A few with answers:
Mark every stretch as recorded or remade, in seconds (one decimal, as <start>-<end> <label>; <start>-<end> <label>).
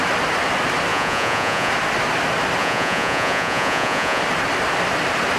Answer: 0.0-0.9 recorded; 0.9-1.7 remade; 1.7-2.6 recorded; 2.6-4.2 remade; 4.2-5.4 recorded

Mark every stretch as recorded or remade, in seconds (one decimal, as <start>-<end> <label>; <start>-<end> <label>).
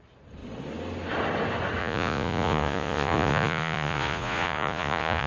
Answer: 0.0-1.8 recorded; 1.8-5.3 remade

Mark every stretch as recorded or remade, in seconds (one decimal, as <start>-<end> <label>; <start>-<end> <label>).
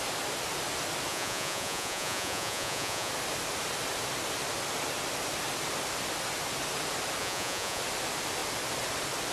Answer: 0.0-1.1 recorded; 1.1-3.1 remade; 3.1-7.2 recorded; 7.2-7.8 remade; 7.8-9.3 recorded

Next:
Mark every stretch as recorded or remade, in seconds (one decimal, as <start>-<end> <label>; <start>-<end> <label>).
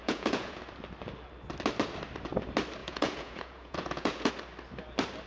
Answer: 0.0-0.6 remade; 0.6-2.8 recorded; 2.8-4.3 remade; 4.3-5.3 recorded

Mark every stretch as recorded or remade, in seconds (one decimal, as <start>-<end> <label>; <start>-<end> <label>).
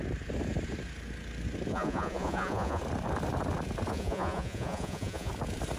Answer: 0.0-1.7 recorded; 1.7-2.8 remade; 2.8-3.9 recorded; 3.9-5.3 remade; 5.3-5.8 recorded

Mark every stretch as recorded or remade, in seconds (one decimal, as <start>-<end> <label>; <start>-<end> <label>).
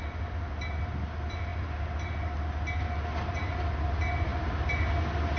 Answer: 0.0-5.4 recorded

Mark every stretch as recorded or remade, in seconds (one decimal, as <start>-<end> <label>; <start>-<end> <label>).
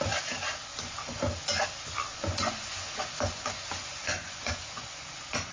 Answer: 0.0-0.7 recorded; 0.7-1.2 remade; 1.2-2.1 recorded; 2.1-5.5 remade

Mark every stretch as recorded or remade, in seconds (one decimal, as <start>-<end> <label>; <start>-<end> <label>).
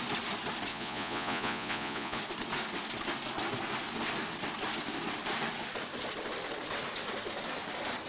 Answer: 0.0-0.7 recorded; 0.7-2.2 remade; 2.2-8.1 recorded